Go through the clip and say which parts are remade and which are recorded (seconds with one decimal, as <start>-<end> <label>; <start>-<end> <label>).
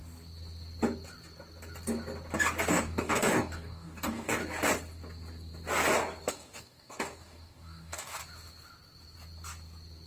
0.0-2.7 recorded; 2.7-4.4 remade; 4.4-6.3 recorded; 6.3-8.2 remade; 8.2-10.1 recorded